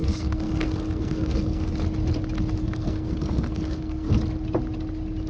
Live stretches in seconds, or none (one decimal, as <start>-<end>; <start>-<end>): 1.7-2.6; 4.2-5.3